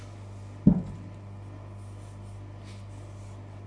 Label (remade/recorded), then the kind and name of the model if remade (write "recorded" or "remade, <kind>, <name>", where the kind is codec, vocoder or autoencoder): recorded